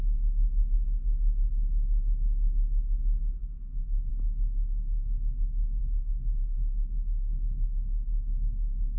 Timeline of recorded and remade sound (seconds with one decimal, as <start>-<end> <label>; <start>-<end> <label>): 0.0-3.4 recorded; 3.4-4.1 remade; 4.1-5.8 recorded; 5.8-9.0 remade